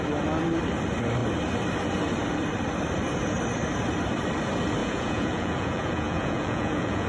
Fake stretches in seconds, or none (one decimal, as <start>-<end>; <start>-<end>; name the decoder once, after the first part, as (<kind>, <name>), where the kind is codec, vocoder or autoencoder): 4.8-7.1 (vocoder, Vocos)